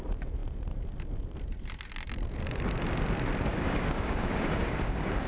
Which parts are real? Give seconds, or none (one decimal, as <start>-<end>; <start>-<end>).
0.0-3.5